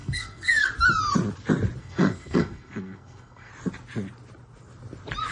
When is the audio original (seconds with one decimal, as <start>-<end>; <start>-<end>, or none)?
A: 0.7-1.8; 3.5-5.3